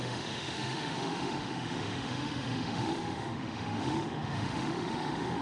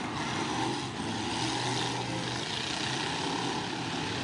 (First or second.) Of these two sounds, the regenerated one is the first